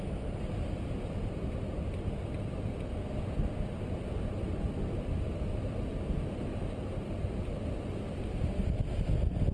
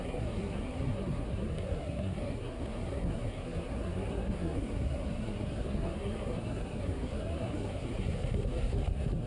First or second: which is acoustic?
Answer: first